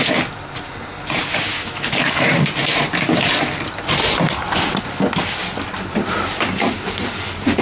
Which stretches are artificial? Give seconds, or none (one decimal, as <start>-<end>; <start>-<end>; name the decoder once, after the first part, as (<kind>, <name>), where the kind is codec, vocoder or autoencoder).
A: 1.5-2.2 (autoencoder, DAC-VAE)